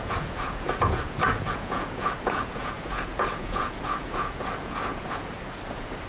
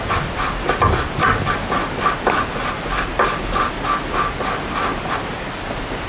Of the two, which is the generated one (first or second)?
first